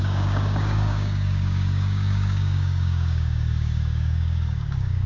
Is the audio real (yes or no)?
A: no